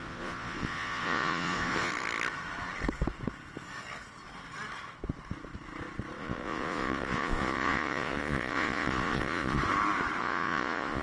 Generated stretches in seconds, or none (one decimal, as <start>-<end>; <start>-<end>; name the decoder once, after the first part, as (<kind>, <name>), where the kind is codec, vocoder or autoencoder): 0.0-1.9 (vocoder, Vocos); 6.2-9.6; 10.2-11.0